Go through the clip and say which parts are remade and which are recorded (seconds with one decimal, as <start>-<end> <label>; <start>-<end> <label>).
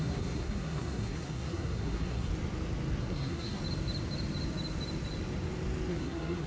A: 0.0-2.3 remade; 2.3-3.0 recorded; 3.0-3.6 remade; 3.6-5.9 recorded; 5.9-6.5 remade